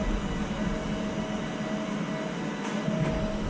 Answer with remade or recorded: recorded